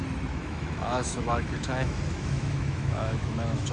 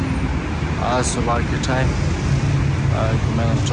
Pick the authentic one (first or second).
second